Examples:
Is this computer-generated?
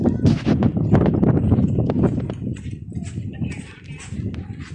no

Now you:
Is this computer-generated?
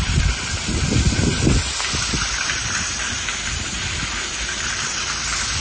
no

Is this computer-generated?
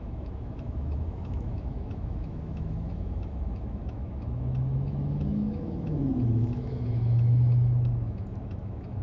yes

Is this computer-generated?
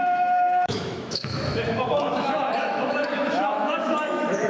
yes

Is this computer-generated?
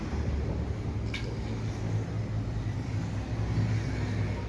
no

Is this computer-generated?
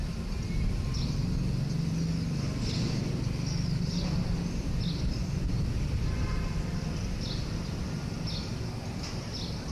no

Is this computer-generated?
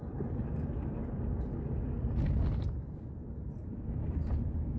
no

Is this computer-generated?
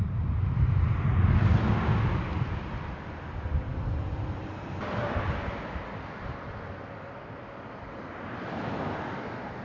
no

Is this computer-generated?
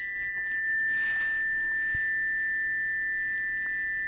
no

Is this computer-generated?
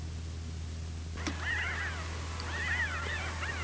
no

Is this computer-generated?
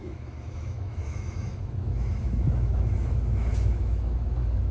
yes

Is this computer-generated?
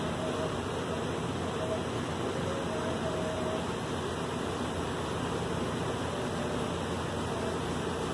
no